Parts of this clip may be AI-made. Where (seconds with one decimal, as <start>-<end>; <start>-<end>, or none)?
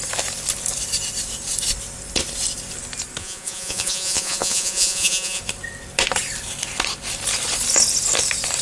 3.2-5.4